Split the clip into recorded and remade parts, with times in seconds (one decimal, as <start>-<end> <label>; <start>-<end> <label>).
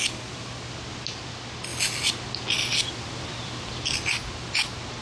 0.0-5.0 recorded